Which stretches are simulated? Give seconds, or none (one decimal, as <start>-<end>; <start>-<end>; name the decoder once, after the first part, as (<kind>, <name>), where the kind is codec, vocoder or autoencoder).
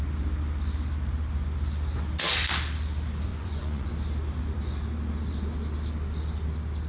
3.3-3.9 (vocoder, Vocos)